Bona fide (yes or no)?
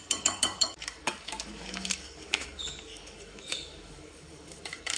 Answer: no